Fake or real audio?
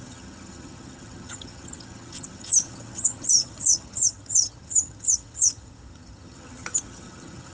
fake